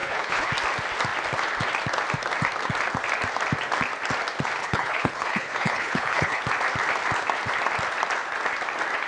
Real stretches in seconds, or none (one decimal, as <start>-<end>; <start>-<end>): 0.5-4.6; 6.4-9.1